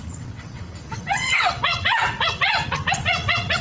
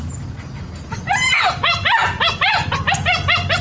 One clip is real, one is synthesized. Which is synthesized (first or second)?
first